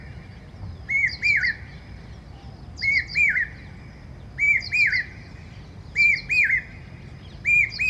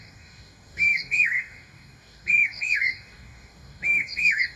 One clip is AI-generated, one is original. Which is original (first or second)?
first